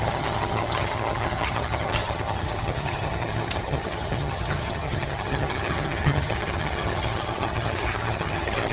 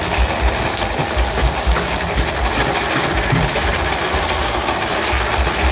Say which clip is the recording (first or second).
second